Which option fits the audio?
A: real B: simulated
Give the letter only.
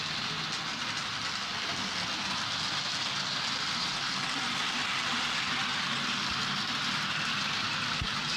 A